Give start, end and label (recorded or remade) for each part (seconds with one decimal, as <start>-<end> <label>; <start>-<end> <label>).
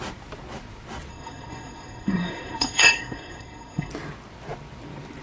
0.0-1.1 recorded; 1.1-3.9 remade; 3.9-5.2 recorded